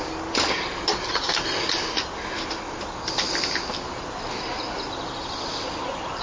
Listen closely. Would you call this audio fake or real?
real